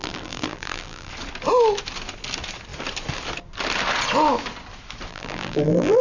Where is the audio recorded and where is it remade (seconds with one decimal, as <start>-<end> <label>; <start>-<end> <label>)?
0.0-1.1 remade; 1.1-5.1 recorded; 5.1-6.0 remade